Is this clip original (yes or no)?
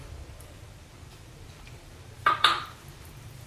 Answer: no